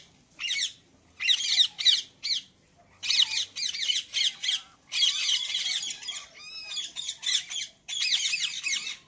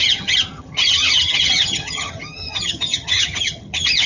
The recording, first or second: first